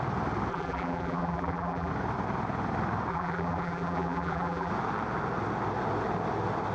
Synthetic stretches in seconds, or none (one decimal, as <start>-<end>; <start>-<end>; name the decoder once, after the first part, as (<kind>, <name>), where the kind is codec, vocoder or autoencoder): 0.5-1.9 (vocoder, BigVGAN v2); 3.1-4.7